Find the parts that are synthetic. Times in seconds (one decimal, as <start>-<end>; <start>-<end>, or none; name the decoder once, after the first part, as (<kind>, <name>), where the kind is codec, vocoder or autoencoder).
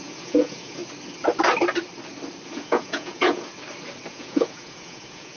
0.0-0.8 (vocoder, Vocos); 2.5-3.5; 4.1-5.4